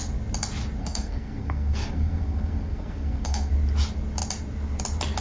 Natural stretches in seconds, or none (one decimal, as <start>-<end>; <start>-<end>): 0.0-0.8; 3.5-5.2